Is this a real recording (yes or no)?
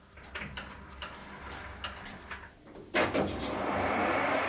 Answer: yes